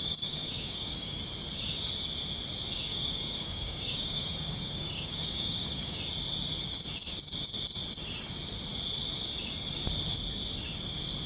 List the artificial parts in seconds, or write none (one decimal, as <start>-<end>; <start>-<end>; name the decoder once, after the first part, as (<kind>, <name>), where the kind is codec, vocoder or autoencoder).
0.0-1.2 (codec, DAC); 2.9-6.0